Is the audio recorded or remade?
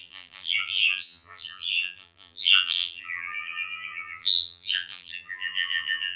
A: remade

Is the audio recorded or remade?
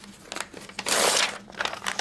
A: recorded